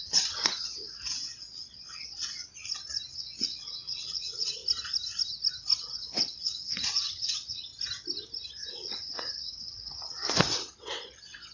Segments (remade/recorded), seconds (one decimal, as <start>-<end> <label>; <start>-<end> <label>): 0.0-2.5 remade; 2.5-3.1 recorded; 3.1-4.6 remade; 4.6-5.8 recorded; 5.8-7.7 remade; 7.7-8.7 recorded; 8.7-11.5 remade